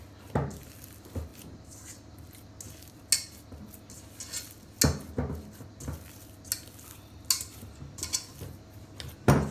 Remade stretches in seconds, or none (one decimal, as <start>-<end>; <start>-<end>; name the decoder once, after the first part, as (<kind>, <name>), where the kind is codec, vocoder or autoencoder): none

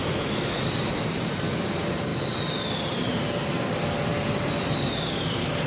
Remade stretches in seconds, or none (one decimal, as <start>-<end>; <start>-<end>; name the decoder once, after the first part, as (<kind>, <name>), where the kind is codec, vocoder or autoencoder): 0.0-0.6 (autoencoder, DAC-VAE)

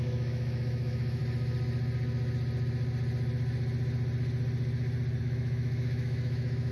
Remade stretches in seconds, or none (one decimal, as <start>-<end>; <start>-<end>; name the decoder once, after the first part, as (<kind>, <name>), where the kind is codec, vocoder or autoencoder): 0.0-1.2 (autoencoder, DAC-VAE); 5.2-6.7

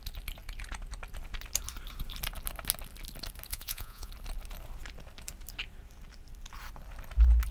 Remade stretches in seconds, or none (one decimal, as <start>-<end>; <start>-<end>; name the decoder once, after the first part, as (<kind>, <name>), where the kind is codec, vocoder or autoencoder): 3.5-4.1 (vocoder, Vocos)

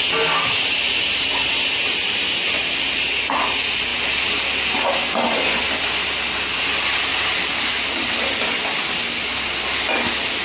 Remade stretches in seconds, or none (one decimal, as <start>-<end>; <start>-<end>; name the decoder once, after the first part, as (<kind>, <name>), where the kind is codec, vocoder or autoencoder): 7.1-10.4 (vocoder, BigVGAN v2)

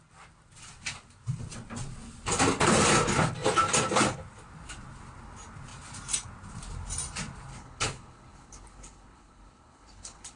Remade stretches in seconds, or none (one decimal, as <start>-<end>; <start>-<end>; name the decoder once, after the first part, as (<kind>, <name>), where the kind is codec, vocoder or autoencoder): 7.5-10.4 (codec, HILCodec)

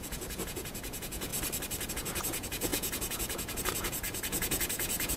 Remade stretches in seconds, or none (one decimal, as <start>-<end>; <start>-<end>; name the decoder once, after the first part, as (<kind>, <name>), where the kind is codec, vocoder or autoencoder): 0.0-1.3 (vocoder, Vocos); 1.9-5.2

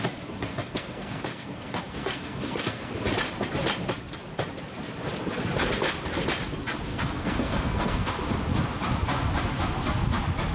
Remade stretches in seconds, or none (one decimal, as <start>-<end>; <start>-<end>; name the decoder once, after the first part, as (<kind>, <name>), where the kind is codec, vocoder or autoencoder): 0.5-2.9 (codec, SNAC); 6.9-8.1